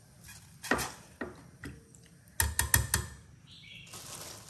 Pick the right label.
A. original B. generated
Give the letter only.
A